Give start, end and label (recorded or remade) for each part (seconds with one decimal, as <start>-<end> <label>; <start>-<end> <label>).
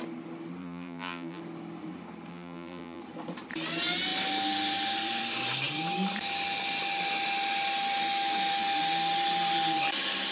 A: 0.0-0.6 recorded; 0.6-1.4 remade; 1.4-2.3 recorded; 2.3-3.0 remade; 3.0-10.3 recorded